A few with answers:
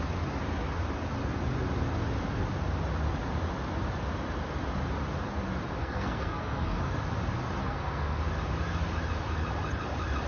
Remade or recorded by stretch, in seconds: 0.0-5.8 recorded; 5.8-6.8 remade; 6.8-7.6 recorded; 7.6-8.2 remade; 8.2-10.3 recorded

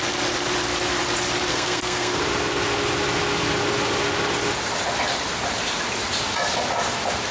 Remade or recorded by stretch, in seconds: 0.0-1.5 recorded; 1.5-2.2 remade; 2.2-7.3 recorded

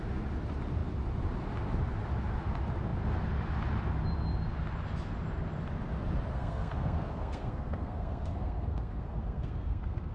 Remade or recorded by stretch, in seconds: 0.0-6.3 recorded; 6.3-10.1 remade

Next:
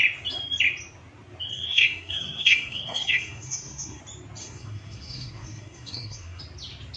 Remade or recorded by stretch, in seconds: 0.0-1.5 recorded; 1.5-4.0 remade; 4.0-4.4 recorded; 4.4-6.4 remade; 6.4-7.0 recorded

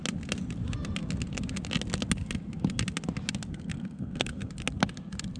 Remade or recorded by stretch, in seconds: 0.0-3.5 recorded; 3.5-4.5 remade; 4.5-5.4 recorded

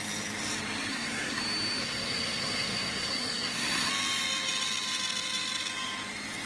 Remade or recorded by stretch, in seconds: 0.0-0.9 recorded; 0.9-1.4 remade; 1.4-1.8 recorded; 1.8-3.9 remade; 3.9-6.5 recorded